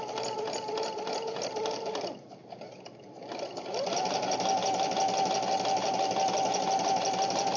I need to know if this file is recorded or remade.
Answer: recorded